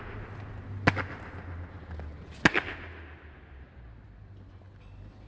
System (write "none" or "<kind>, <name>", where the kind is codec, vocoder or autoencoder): none